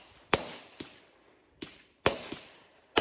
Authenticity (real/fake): real